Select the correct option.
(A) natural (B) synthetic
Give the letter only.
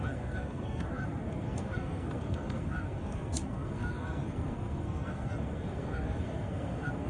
B